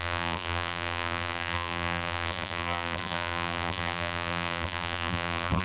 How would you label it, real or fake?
fake